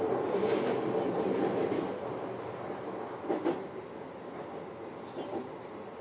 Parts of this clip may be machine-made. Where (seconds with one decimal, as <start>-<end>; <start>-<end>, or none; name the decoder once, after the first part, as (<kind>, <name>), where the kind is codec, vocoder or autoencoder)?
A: none